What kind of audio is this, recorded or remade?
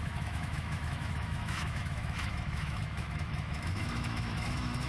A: remade